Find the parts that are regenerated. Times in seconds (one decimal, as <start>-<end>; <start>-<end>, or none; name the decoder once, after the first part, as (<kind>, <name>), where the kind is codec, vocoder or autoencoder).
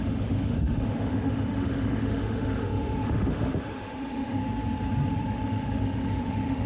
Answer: 0.0-4.4 (autoencoder, DAC-VAE); 5.1-6.7